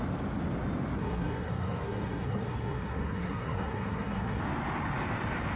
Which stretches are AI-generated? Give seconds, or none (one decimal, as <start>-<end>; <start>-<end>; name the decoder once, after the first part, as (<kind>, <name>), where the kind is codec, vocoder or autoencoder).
1.0-4.4 (codec, SNAC)